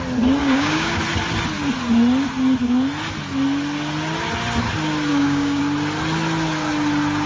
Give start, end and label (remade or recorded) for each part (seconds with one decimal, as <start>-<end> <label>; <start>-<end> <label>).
0.0-0.4 recorded; 0.4-1.0 remade; 1.0-5.1 recorded; 5.1-5.6 remade; 5.6-7.3 recorded